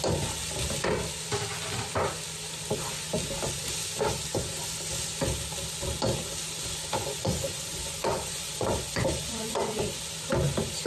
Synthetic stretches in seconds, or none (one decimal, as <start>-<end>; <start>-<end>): 7.0-10.0